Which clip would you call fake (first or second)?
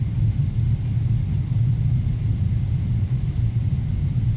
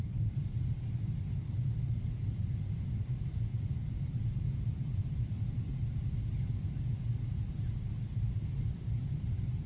second